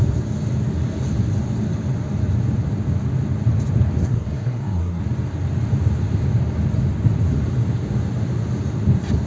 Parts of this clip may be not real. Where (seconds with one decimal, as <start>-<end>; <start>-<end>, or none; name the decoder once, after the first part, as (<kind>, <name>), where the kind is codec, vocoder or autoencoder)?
4.0-5.0 (codec, SNAC)